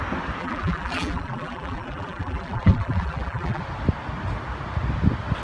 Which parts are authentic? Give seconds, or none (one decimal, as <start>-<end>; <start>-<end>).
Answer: 0.0-0.4; 3.6-5.4